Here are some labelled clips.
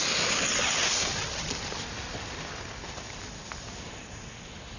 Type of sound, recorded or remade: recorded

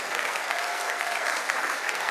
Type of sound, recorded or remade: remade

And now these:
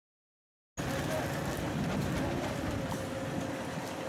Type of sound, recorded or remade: recorded